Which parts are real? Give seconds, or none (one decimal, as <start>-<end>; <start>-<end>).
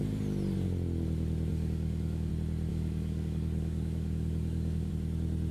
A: 0.0-1.5; 2.3-2.7; 4.9-5.5